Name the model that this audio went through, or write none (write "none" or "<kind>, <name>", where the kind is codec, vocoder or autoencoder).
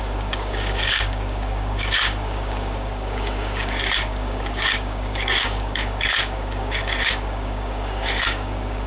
codec, DAC